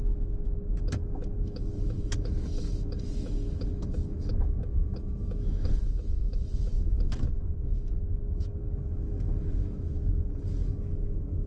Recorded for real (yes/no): no